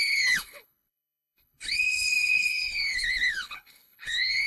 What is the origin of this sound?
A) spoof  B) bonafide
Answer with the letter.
A